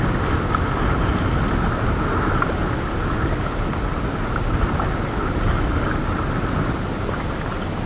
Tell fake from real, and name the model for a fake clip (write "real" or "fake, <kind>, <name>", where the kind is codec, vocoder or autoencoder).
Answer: real